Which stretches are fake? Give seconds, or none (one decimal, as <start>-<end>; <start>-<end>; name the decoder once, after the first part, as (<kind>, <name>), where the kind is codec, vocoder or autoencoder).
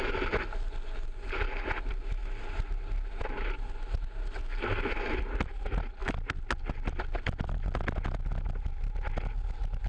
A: none